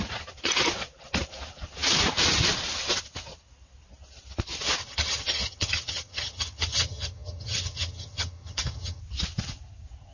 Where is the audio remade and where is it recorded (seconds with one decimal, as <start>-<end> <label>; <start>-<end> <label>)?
0.0-4.8 recorded; 4.8-9.0 remade; 9.0-10.1 recorded